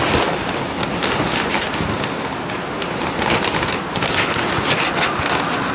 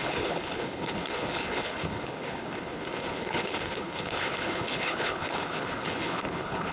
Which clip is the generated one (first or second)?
second